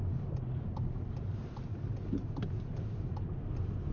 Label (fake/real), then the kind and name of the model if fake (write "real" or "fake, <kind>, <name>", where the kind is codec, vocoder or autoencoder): real